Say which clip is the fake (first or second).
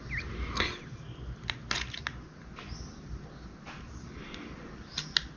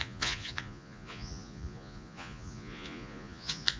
second